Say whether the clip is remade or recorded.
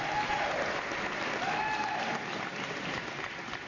recorded